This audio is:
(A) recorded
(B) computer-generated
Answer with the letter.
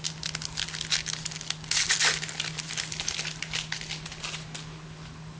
A